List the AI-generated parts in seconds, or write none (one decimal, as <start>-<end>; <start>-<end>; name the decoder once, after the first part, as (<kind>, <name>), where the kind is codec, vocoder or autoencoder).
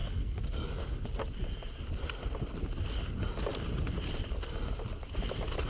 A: 0.0-0.7 (codec, SNAC)